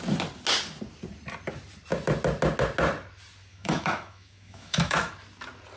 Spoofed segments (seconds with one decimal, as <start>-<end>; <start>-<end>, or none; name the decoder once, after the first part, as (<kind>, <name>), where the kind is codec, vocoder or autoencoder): 3.5-5.1 (autoencoder, DAC-VAE)